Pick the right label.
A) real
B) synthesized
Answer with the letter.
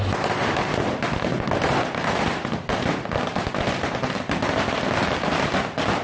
A